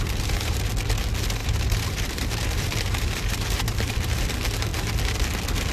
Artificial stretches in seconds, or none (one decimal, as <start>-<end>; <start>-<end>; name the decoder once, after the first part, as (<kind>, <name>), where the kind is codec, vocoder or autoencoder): 0.0-0.7 (vocoder, BigVGAN v2); 1.4-4.2